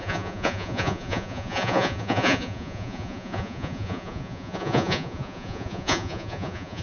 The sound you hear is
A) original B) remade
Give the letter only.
B